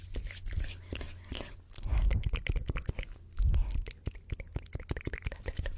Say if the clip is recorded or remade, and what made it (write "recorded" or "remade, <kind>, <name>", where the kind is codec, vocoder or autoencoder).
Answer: recorded